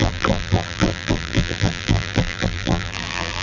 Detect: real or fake fake